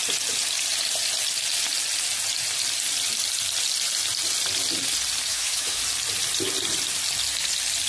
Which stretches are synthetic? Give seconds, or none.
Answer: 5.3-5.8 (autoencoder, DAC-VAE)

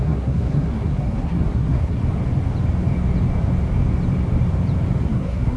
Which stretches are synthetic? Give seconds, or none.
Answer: 0.0-2.0 (codec, SNAC); 5.0-5.6

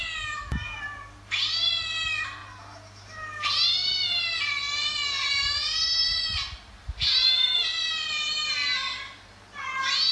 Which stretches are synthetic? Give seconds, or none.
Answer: none

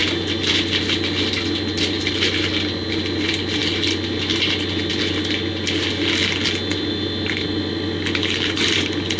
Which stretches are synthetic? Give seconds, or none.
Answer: none

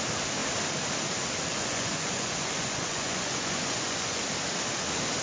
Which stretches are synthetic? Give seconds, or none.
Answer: 1.5-4.2 (vocoder, Vocos)

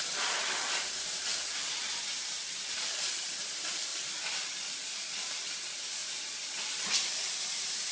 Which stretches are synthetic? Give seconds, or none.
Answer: 0.0-6.0 (vocoder, BigVGAN v2); 6.6-7.9